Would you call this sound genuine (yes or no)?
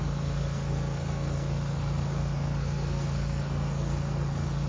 no